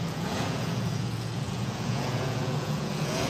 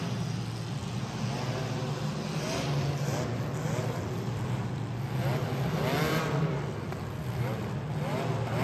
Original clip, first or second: second